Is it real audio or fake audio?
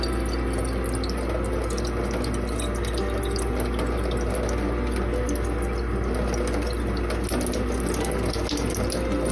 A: real